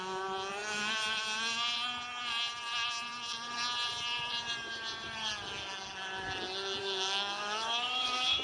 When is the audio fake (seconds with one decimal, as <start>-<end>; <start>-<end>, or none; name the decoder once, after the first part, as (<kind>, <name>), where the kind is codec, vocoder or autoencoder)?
6.8-8.4 (autoencoder, DAC-VAE)

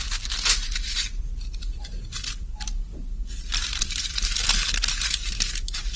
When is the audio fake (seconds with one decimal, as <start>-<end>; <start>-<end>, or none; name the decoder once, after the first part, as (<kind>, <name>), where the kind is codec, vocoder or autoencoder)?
1.1-4.7 (vocoder, BigVGAN v2)

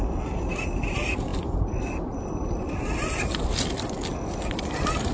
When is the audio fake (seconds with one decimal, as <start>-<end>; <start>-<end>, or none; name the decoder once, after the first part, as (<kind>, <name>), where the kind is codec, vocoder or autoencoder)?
none

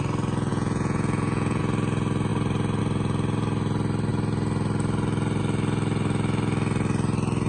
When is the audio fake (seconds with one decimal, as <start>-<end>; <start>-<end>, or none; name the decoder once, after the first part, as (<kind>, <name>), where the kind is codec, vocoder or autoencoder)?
0.5-1.6 (vocoder, Vocos)

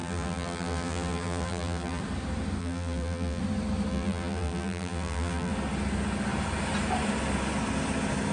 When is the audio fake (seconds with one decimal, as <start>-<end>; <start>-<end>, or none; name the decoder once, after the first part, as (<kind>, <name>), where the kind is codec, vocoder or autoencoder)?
0.0-2.0 (vocoder, BigVGAN v2); 2.6-3.4; 3.9-5.5

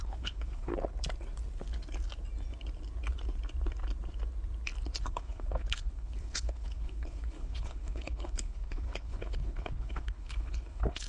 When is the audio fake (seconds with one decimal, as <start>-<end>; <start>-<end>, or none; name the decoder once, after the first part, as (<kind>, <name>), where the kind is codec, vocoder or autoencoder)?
0.0-0.7 (codec, HILCodec); 5.0-11.1

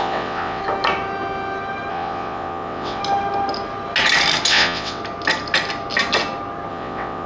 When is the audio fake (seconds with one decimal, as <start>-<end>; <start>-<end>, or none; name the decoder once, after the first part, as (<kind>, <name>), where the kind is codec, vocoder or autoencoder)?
0.0-0.6 (vocoder, WaveNeXt); 1.9-3.0; 4.5-5.0; 6.7-7.3